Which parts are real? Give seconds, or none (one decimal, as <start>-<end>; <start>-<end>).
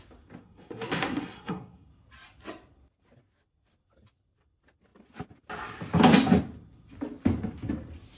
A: 0.0-0.4; 1.9-8.2